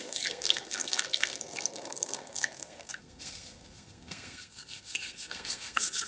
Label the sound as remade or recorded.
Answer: remade